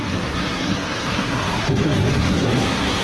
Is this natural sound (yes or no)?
no